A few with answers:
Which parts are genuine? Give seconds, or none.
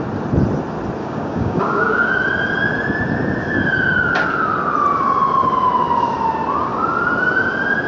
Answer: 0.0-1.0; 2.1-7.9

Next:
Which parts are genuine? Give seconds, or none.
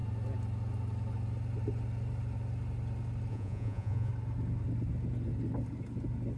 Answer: 0.0-3.3; 4.1-6.4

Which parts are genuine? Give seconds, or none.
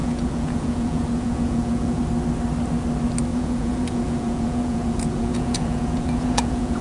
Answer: 2.0-3.3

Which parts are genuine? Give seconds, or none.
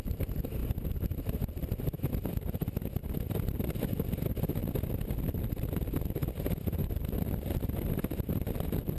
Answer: 4.6-5.5